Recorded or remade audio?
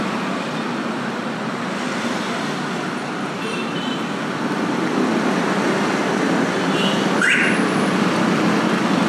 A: recorded